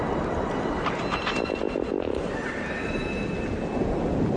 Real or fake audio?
real